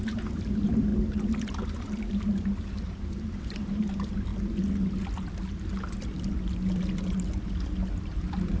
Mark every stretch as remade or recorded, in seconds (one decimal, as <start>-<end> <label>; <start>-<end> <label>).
0.0-4.3 remade; 4.3-8.0 recorded; 8.0-8.6 remade